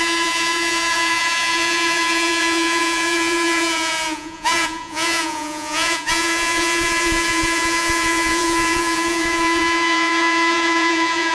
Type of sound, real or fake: fake